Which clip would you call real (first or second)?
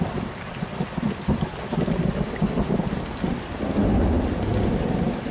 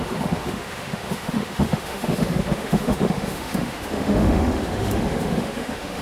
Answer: first